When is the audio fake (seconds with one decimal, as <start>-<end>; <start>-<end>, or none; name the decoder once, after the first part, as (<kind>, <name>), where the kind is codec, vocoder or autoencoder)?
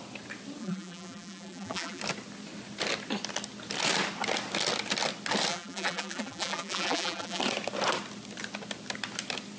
0.6-2.0 (vocoder, BigVGAN v2); 5.5-7.4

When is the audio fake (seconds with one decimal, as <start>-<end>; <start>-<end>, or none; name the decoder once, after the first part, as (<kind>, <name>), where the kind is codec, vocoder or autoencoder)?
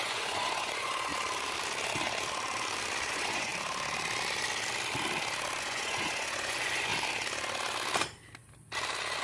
0.0-1.1 (vocoder, Vocos); 3.1-3.5; 5.6-6.9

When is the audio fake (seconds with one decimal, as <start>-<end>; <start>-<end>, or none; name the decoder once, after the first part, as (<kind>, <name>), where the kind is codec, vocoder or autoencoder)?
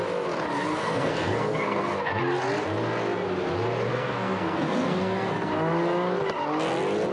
0.8-2.2 (codec, SNAC); 3.9-5.5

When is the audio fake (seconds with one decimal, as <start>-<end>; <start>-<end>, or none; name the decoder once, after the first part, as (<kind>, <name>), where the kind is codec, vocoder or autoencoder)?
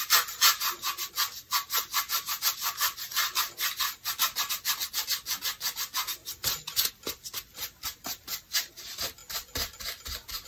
none